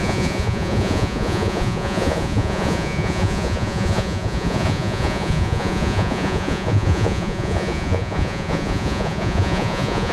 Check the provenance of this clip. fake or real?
fake